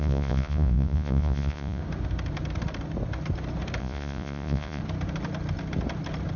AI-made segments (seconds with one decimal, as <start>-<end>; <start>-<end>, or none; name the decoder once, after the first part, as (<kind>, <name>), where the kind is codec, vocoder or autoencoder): 0.0-1.8 (vocoder, Vocos); 3.8-4.8